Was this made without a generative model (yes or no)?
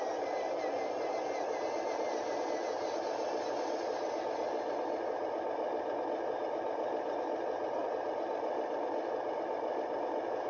yes